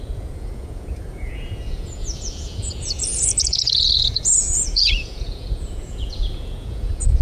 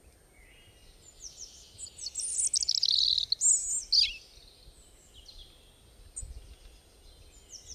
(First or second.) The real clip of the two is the second